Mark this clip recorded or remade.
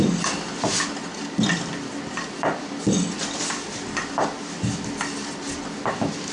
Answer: recorded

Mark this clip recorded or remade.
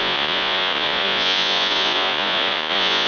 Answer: remade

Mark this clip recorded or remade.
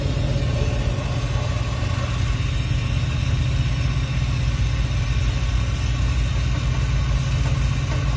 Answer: recorded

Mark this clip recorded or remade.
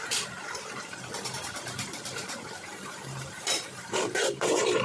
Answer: remade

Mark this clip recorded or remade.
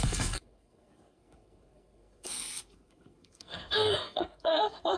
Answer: remade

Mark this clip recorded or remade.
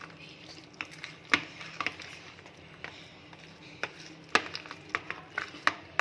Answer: recorded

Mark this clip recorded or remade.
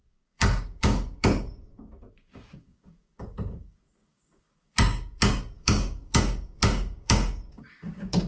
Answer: remade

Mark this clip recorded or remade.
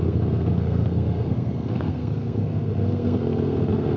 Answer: remade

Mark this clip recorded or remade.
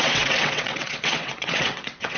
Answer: remade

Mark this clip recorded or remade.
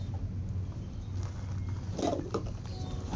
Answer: recorded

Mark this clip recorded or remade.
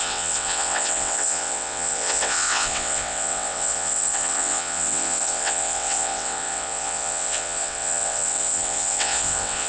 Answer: remade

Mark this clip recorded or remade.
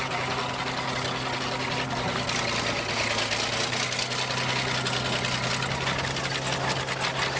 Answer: recorded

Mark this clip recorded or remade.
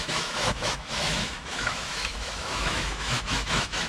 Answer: remade